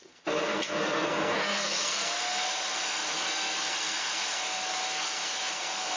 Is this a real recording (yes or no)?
no